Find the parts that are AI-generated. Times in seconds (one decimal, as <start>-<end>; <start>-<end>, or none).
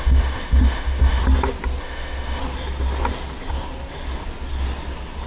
0.0-1.2; 1.8-2.4